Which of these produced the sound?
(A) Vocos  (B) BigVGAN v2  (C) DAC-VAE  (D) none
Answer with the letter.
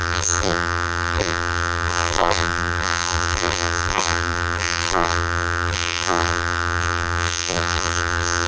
B